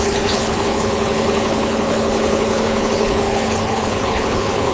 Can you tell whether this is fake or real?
fake